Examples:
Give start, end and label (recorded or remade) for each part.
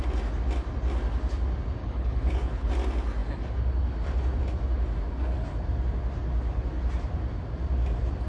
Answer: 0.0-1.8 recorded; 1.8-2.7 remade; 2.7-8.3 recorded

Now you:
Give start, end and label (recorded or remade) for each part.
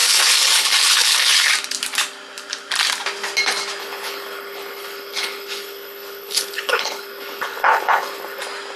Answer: 0.0-1.5 remade; 1.5-3.8 recorded; 3.8-8.4 remade; 8.4-8.8 recorded